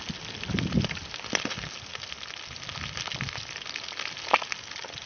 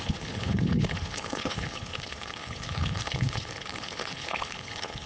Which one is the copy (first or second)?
second